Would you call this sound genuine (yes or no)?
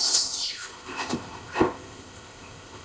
no